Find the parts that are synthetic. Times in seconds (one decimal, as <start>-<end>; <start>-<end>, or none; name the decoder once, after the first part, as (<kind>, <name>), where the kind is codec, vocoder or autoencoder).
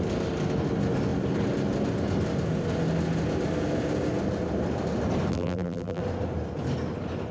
5.3-6.0 (vocoder, BigVGAN v2)